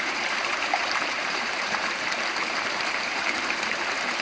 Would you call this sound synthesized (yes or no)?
yes